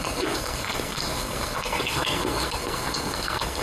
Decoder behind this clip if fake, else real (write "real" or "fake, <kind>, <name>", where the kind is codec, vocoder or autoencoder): fake, codec, SNAC